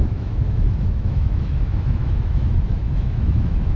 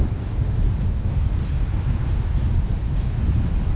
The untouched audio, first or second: second